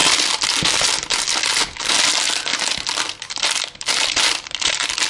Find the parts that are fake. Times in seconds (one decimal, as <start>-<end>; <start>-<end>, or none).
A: 2.5-5.1

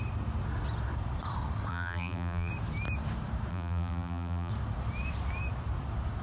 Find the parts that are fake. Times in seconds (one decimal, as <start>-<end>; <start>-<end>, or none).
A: 1.7-2.5; 3.5-4.5

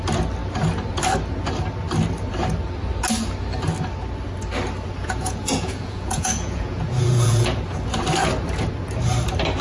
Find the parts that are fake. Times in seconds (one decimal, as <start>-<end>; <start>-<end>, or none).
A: 5.0-7.6